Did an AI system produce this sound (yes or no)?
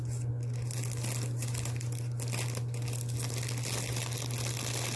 no